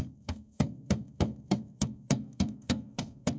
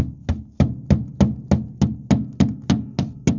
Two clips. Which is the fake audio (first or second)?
first